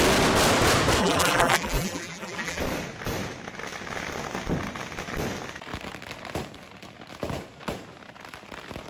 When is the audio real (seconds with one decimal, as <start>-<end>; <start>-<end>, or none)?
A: 0.0-1.0; 2.6-8.9